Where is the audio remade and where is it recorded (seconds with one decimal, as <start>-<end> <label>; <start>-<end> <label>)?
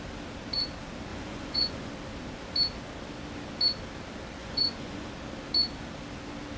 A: 0.0-1.1 recorded; 1.1-1.9 remade; 1.9-4.4 recorded; 4.4-5.1 remade; 5.1-6.6 recorded